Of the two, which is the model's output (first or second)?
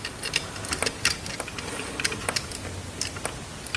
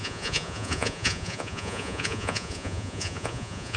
second